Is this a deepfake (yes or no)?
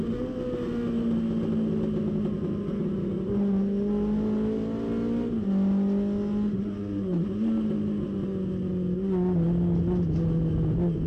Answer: no